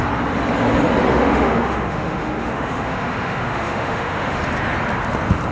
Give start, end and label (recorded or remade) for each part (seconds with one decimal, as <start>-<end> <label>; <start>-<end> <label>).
0.0-1.1 recorded; 1.1-4.4 remade; 4.4-5.5 recorded